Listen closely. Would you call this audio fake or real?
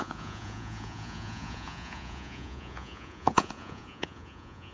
fake